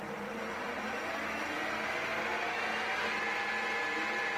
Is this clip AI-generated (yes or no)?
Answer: no